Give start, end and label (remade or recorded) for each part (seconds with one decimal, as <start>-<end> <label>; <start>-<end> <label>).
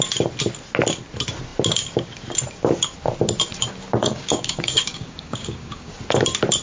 0.0-4.0 recorded; 4.0-5.9 remade; 5.9-6.6 recorded